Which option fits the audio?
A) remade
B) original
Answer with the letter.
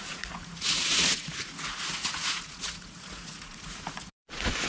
A